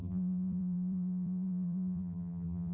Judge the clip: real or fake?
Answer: fake